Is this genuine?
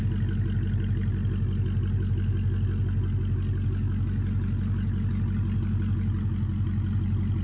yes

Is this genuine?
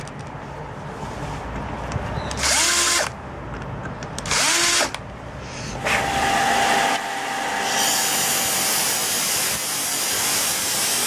yes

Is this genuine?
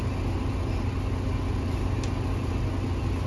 yes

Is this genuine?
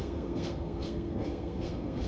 no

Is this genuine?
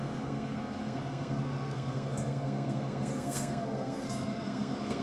no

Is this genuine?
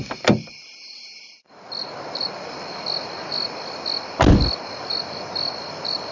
yes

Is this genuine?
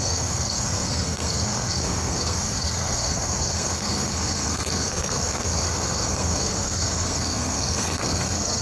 no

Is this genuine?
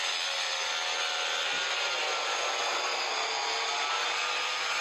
yes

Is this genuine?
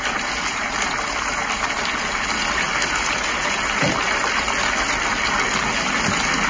yes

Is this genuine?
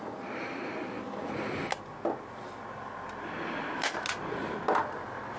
yes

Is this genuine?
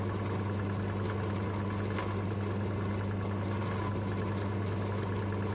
yes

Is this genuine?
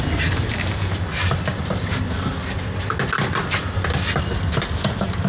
yes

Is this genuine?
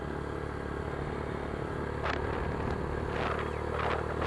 yes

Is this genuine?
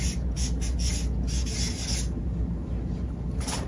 yes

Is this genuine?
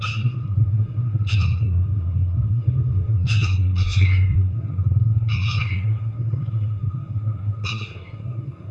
no